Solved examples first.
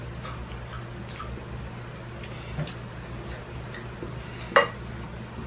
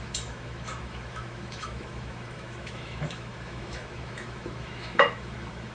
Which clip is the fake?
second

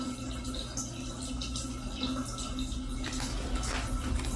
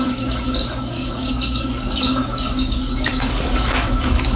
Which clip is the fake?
second